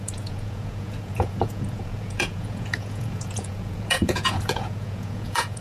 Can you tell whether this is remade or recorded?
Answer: remade